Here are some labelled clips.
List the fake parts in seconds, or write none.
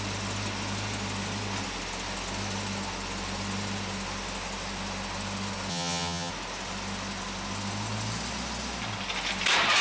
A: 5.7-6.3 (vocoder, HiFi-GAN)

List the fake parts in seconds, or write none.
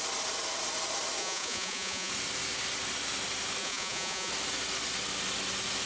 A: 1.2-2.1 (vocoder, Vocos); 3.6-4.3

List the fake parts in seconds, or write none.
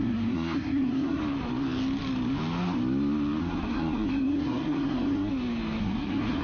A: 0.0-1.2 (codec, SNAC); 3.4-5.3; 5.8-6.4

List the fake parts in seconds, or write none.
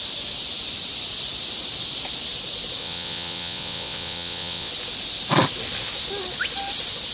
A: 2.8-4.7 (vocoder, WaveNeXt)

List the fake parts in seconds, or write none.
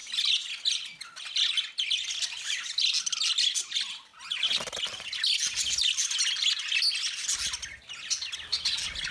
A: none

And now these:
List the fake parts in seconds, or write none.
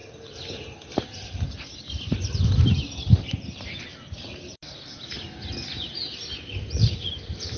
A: none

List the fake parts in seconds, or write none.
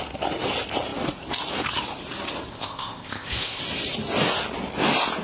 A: 2.5-3.6 (codec, ZipCodec)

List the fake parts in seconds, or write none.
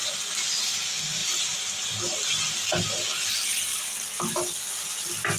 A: none